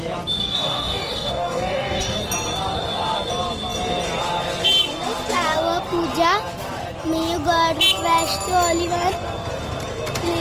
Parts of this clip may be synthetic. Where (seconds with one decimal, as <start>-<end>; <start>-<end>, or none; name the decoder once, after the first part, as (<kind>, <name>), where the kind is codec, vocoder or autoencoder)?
0.4-2.2 (codec, DAC)